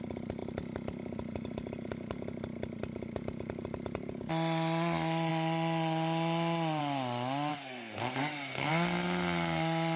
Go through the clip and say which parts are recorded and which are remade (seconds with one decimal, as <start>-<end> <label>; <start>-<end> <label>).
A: 0.0-7.5 recorded; 7.5-8.7 remade; 8.7-10.0 recorded